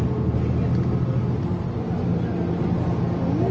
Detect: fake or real real